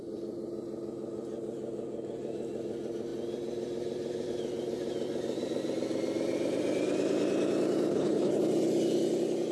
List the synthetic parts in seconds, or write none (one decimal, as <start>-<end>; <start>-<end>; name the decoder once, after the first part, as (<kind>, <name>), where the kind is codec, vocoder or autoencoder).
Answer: 7.9-8.4 (codec, HILCodec)